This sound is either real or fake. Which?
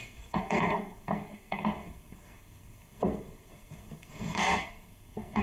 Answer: fake